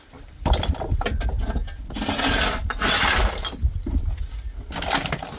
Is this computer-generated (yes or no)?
no